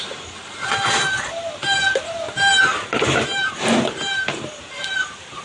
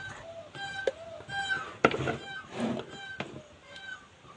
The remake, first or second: first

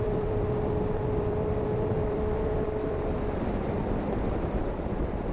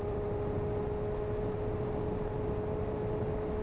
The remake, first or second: first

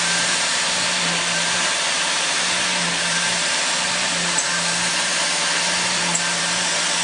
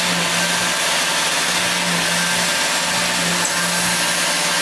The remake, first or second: first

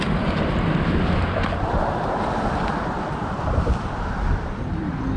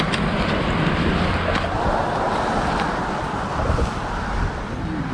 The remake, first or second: first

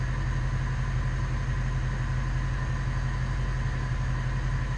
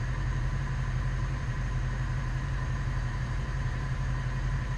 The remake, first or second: second